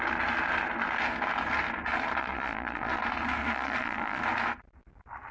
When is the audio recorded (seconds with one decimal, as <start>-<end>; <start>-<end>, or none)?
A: 0.0-2.2; 3.0-3.4; 4.2-5.3

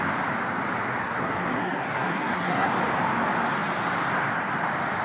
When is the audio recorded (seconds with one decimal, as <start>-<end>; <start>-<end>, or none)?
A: 0.0-1.0; 2.7-5.0

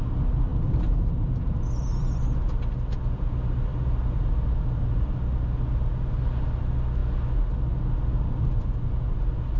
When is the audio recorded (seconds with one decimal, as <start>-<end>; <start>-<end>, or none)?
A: 0.0-9.6

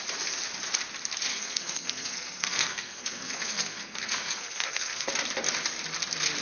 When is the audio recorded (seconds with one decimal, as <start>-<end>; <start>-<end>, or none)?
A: 0.0-1.3; 5.1-6.4

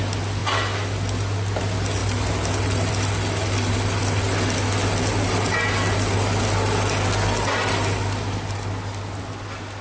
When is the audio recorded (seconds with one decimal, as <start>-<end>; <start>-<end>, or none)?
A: 0.0-9.8

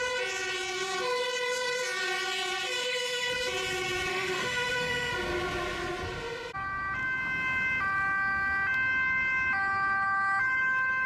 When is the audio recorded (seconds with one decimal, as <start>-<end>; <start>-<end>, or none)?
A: 0.0-2.8; 3.3-4.1; 5.1-11.1